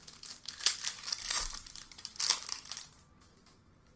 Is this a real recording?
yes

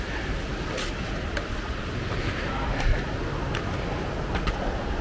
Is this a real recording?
yes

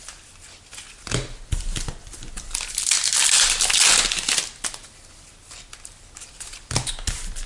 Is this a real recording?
yes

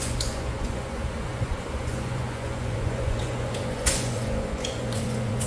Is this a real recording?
no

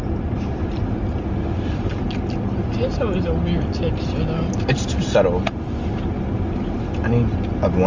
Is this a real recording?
yes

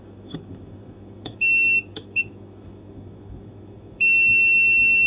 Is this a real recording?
no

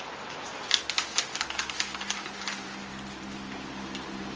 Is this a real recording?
yes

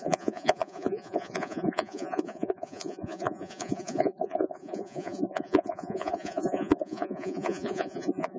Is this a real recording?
no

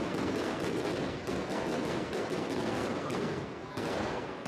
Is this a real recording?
no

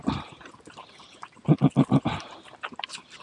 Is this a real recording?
no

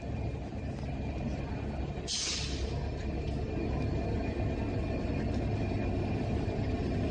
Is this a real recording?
yes